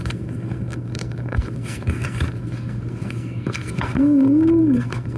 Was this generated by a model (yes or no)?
yes